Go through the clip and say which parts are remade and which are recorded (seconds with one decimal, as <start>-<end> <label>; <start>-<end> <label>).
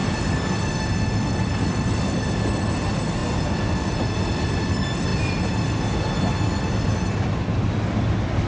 0.0-8.5 recorded